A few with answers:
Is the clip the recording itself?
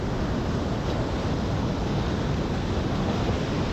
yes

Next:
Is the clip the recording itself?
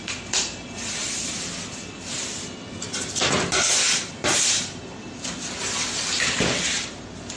yes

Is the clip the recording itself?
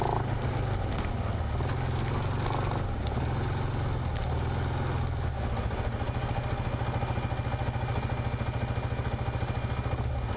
yes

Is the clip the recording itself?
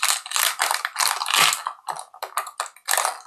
yes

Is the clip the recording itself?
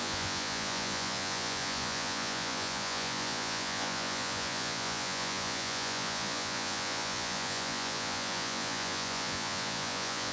no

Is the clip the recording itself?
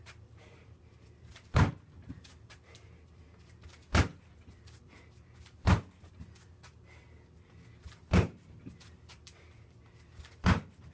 no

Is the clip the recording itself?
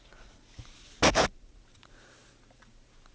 yes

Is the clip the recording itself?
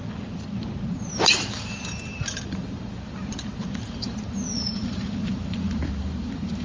no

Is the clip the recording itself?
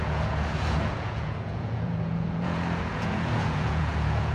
no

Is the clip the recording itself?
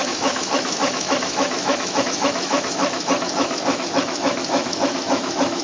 no